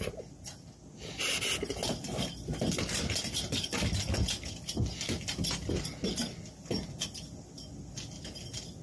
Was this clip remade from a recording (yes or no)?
no